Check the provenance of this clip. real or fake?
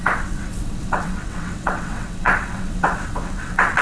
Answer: fake